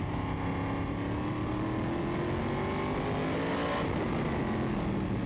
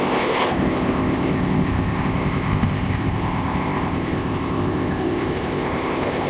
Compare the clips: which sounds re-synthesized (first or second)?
second